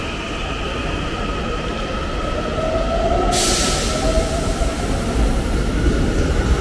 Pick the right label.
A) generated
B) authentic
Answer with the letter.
B